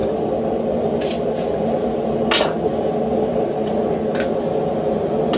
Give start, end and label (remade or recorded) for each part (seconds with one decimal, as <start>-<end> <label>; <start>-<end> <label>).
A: 0.0-5.4 recorded